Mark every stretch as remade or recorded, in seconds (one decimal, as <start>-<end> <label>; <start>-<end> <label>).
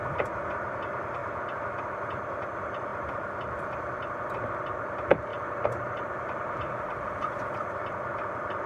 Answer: 0.0-5.3 recorded; 5.3-6.9 remade; 6.9-8.7 recorded